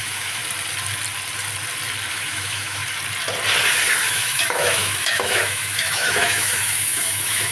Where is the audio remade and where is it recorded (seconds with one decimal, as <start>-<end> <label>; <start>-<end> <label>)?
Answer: 0.0-0.4 remade; 0.4-2.1 recorded; 2.1-2.8 remade; 2.8-4.1 recorded; 4.1-7.5 remade